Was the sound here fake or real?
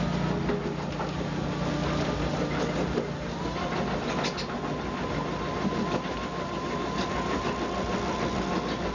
real